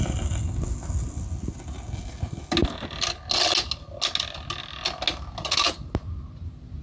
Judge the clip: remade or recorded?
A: recorded